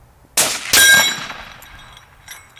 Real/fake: real